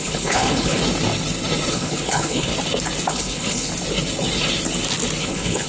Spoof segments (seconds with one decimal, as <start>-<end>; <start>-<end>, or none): 0.0-0.8; 1.7-2.5; 3.1-3.7; 5.2-5.7